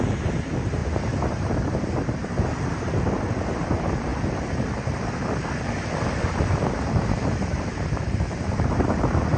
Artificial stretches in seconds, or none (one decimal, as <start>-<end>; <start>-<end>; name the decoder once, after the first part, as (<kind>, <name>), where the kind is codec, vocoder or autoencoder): 0.0-0.8 (vocoder, BigVGAN v2); 1.3-9.4